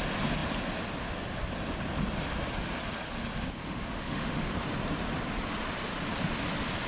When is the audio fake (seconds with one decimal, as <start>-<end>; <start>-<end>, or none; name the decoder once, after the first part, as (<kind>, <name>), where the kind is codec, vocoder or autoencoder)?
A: 3.6-4.5 (autoencoder, DAC-VAE)